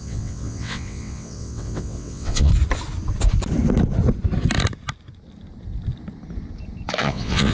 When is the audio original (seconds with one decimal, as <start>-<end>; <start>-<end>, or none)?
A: 2.5-7.0